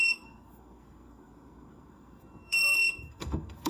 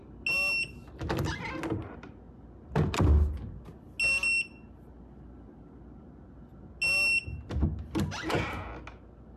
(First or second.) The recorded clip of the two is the second